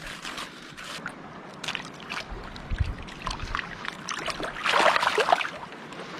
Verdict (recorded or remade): recorded